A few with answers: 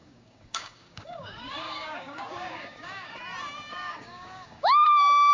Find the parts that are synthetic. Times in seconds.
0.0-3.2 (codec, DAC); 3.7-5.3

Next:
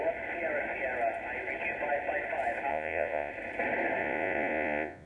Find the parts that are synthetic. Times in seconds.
2.7-3.3 (vocoder, Vocos); 4.0-5.1

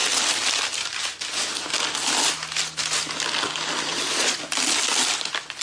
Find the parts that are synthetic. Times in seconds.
3.9-4.4 (vocoder, Vocos)

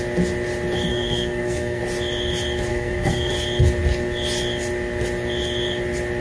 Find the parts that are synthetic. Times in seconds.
0.9-1.8 (codec, SNAC); 2.7-3.3

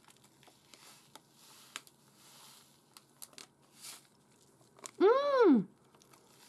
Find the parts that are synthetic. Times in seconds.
none